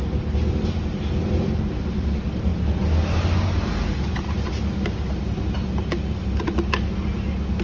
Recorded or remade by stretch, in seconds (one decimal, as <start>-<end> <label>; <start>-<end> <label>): 0.0-7.6 recorded